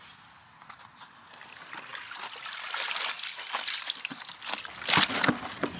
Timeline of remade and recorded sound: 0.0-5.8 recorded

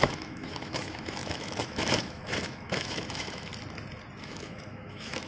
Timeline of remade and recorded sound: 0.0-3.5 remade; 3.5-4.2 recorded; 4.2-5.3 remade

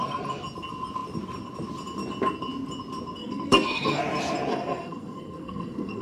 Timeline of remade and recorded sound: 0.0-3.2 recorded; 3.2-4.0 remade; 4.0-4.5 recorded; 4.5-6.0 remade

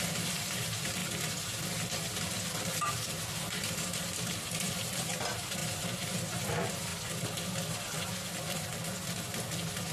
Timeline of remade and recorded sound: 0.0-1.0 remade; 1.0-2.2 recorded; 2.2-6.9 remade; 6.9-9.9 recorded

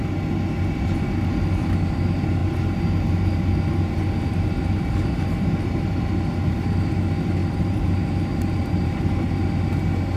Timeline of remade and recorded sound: 0.0-7.4 recorded; 7.4-7.9 remade; 7.9-8.3 recorded; 8.3-9.3 remade; 9.3-10.2 recorded

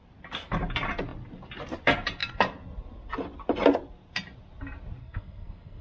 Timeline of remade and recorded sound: 0.0-5.0 recorded; 5.0-5.8 remade

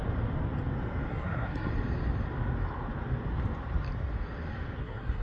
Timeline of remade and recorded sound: 0.0-1.1 recorded; 1.1-1.7 remade; 1.7-4.8 recorded; 4.8-5.2 remade

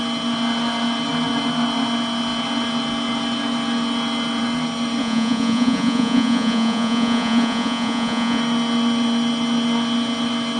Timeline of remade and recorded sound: 0.0-5.0 recorded; 5.0-8.4 remade; 8.4-10.6 recorded